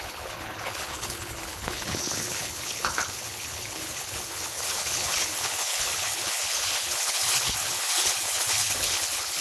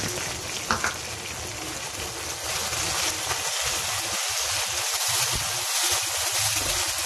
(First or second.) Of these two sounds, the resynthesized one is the first